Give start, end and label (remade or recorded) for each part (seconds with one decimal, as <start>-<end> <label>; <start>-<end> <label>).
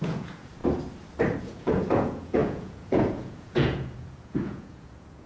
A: 0.0-0.6 remade; 0.6-1.4 recorded; 1.4-5.3 remade